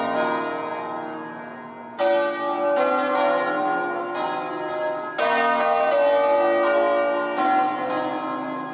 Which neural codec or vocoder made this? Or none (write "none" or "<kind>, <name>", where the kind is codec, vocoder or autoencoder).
none